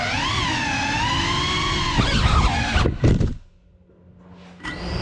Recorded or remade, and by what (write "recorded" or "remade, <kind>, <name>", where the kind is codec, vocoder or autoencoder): recorded